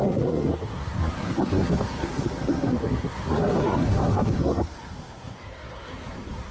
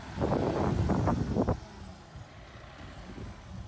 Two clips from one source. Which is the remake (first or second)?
first